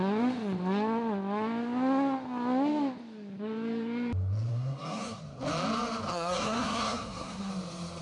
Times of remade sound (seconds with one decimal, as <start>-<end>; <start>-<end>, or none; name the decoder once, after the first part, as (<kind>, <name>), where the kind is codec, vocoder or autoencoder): 4.5-5.2 (codec, SNAC); 6.1-7.5